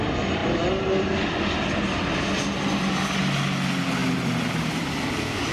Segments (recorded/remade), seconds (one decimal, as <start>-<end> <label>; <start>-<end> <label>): 0.0-4.0 recorded; 4.0-5.5 remade

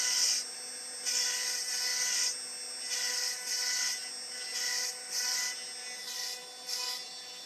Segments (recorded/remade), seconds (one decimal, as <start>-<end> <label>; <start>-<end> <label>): 0.0-7.5 recorded

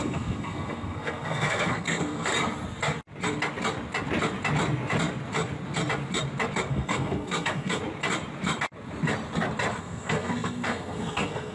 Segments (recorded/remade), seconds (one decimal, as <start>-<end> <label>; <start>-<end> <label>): 0.0-2.3 remade; 2.3-6.7 recorded; 6.7-7.8 remade; 7.8-9.8 recorded; 9.8-11.5 remade

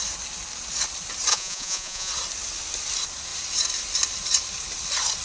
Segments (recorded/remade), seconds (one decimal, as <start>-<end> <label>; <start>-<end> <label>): 0.0-1.3 recorded; 1.3-2.1 remade; 2.1-5.2 recorded

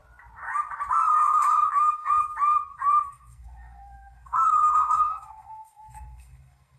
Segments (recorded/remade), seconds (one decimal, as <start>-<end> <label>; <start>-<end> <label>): 0.0-1.1 recorded; 1.1-2.1 remade; 2.1-2.7 recorded; 2.7-6.8 remade

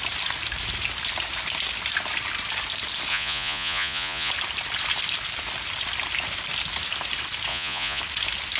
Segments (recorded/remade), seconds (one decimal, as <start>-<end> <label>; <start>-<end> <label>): 0.0-3.1 recorded; 3.1-4.3 remade; 4.3-7.5 recorded; 7.5-8.0 remade; 8.0-8.6 recorded

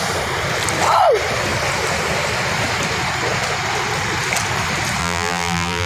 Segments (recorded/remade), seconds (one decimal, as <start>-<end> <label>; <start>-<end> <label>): 0.0-5.0 recorded; 5.0-5.9 remade

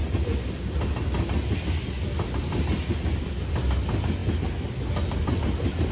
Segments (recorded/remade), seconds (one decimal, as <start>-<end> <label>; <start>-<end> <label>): 0.0-5.9 recorded